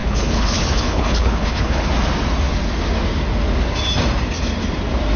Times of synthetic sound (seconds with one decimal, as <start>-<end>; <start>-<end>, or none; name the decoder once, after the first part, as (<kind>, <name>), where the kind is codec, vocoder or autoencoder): 0.0-1.9 (codec, HILCodec)